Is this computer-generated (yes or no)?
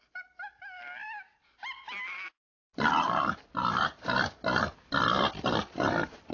no